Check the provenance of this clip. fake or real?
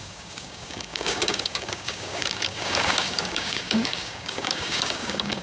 fake